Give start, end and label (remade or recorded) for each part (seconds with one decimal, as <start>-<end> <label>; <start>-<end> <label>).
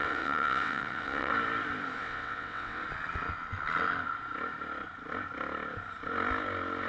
0.0-1.3 remade; 1.3-2.0 recorded; 2.0-2.8 remade; 2.8-6.9 recorded